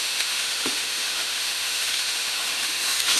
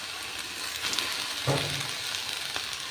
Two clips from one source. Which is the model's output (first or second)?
first